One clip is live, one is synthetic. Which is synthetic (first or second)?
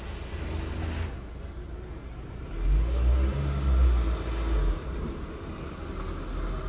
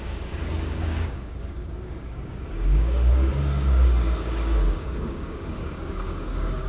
second